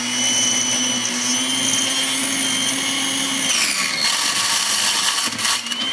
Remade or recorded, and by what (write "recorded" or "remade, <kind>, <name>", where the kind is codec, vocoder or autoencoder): recorded